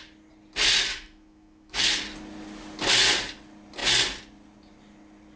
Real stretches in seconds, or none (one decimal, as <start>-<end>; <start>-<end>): 0.0-0.9; 1.8-5.4